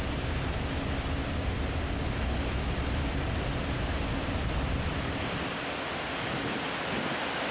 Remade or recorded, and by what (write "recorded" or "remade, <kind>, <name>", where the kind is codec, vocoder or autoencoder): recorded